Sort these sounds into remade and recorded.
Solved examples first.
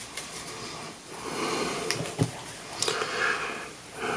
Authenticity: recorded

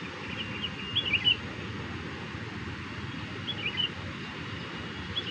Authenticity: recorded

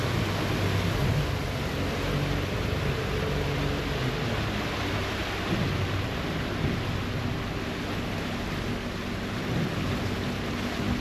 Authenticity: recorded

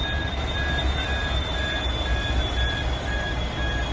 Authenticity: recorded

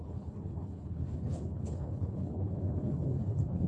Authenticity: remade